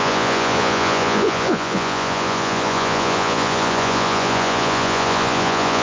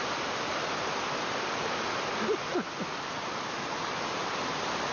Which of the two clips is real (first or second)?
second